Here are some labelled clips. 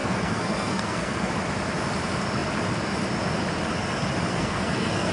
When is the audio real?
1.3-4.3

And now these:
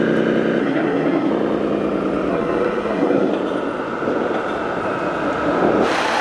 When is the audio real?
0.0-0.6; 1.3-2.3; 3.3-6.2

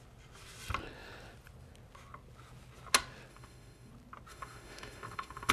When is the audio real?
0.0-3.3; 3.9-4.3

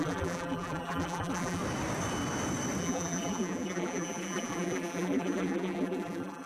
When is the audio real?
1.6-2.8

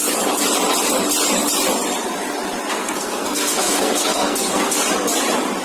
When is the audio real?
0.0-2.7; 4.8-5.6

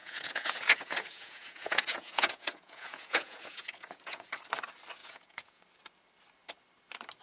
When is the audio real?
4.3-5.0; 5.6-7.2